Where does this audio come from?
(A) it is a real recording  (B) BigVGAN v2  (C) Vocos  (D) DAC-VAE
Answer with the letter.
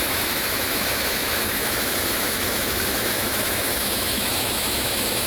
D